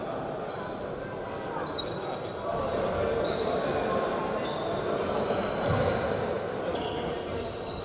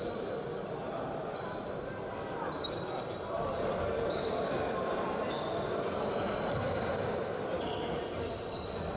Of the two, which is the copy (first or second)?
second